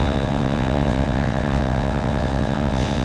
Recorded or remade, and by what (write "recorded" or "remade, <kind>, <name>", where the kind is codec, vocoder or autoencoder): remade, vocoder, WaveNeXt